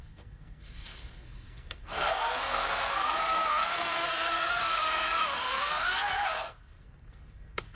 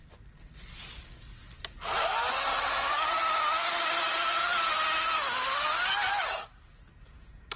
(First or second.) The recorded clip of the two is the second